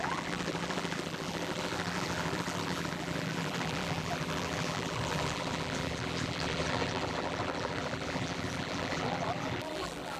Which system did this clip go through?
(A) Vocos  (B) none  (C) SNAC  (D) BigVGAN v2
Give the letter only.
D